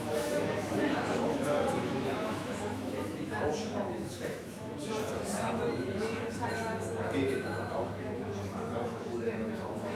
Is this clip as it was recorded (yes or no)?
no